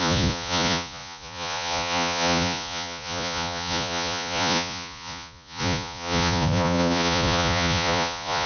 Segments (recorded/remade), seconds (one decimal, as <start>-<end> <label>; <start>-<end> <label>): 0.0-8.5 remade